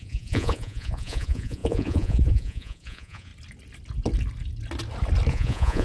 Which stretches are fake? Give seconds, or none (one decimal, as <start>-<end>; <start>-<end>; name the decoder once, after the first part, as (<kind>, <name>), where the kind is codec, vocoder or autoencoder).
0.0-3.3 (vocoder, Vocos); 5.3-5.8